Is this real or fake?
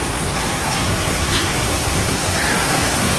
fake